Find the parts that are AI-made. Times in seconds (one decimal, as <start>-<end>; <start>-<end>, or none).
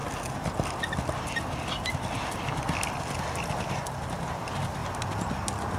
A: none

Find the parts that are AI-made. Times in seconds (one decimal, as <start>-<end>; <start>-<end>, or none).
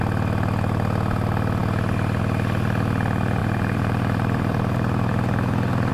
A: 3.4-5.9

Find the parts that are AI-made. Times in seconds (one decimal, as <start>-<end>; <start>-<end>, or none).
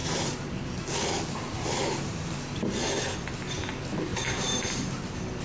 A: 0.0-2.9; 4.1-5.4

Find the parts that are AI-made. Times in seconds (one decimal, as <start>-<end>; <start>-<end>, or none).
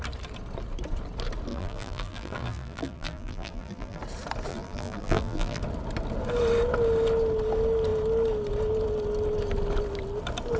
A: 1.5-4.0; 4.5-5.6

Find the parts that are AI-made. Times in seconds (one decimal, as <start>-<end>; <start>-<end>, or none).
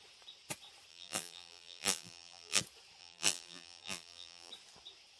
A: 0.9-2.6; 3.0-4.5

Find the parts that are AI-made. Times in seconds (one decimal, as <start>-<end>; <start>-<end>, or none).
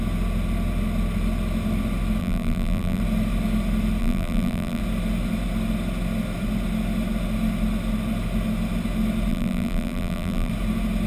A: 2.2-3.0; 4.0-4.8; 9.3-10.5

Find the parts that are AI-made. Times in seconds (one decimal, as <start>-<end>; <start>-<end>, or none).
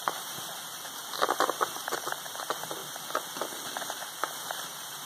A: 0.0-2.8; 3.7-5.0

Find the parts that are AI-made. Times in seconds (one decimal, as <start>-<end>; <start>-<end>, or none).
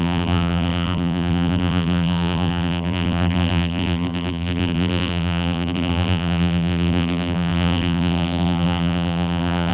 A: 0.0-9.7